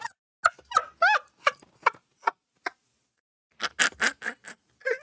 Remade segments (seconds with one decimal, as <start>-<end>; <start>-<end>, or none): none